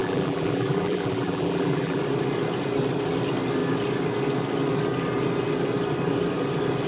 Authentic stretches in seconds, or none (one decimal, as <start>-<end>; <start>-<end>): 2.0-6.9